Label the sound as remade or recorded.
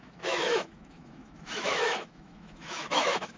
remade